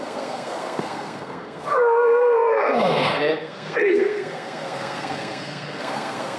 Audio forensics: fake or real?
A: fake